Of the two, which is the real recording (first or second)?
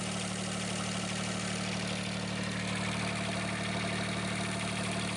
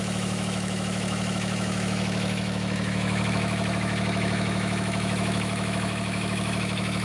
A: first